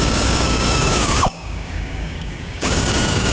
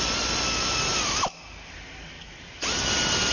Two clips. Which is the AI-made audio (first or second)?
first